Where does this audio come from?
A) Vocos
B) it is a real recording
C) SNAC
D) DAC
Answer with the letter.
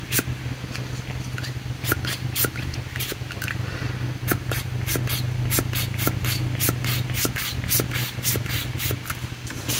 B